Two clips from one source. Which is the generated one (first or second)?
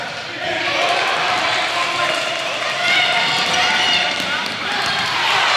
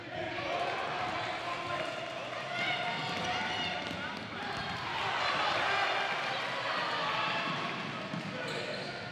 first